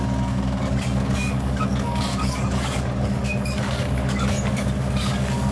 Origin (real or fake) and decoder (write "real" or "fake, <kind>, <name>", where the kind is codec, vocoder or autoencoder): fake, codec, DAC